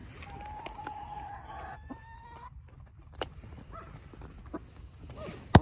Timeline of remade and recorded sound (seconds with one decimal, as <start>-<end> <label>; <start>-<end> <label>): 0.0-5.6 recorded